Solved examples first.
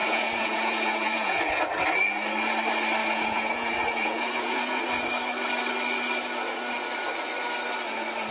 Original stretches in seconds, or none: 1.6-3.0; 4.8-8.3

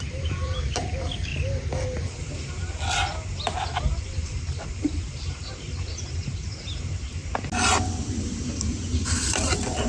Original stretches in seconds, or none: 1.3-3.6; 7.2-8.2